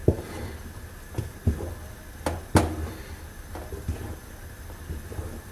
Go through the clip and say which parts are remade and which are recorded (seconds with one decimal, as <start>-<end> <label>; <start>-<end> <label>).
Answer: 0.0-5.5 recorded